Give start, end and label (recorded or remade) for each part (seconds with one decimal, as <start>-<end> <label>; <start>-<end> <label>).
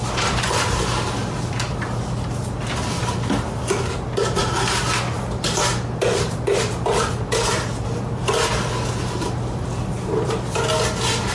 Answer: 0.0-11.3 recorded